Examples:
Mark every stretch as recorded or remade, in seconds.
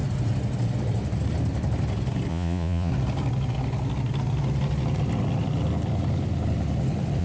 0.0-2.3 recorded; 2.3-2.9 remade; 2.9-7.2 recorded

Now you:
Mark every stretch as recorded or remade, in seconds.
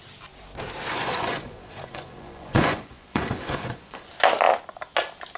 0.0-0.9 recorded; 0.9-4.1 remade; 4.1-5.4 recorded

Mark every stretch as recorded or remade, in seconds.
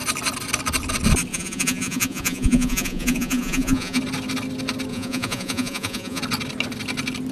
0.0-1.3 recorded; 1.3-4.0 remade; 4.0-4.9 recorded; 4.9-6.2 remade; 6.2-7.3 recorded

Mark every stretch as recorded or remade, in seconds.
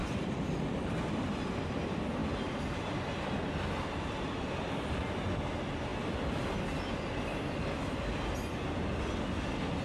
0.0-9.8 recorded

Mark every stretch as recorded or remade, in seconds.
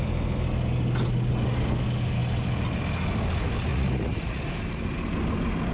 0.0-3.7 recorded; 3.7-4.4 remade; 4.4-5.7 recorded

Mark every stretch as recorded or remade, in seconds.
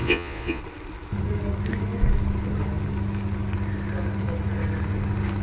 0.0-0.6 remade; 0.6-5.4 recorded